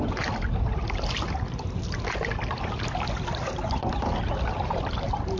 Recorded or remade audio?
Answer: recorded